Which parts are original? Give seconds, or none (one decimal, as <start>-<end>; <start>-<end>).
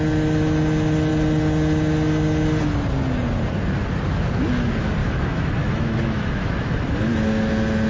0.0-5.0; 7.5-7.9